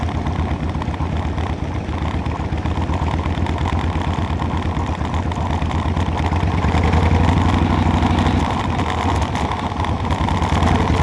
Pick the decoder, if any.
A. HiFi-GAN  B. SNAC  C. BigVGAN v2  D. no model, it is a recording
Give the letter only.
D